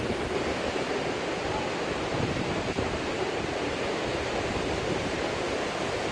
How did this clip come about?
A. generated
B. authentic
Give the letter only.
A